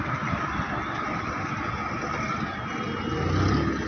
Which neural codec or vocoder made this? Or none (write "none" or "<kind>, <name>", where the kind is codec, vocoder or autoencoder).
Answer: none